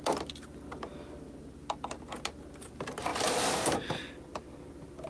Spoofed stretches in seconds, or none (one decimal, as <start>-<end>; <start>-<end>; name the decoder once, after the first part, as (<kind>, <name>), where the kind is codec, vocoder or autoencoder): none